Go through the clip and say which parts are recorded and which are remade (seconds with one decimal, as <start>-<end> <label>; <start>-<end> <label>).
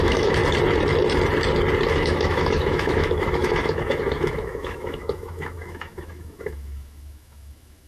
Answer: 0.0-0.4 remade; 0.4-1.9 recorded; 1.9-7.9 remade